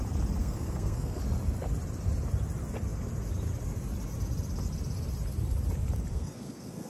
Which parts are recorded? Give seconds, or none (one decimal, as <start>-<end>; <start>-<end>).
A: 0.0-0.4; 1.2-6.1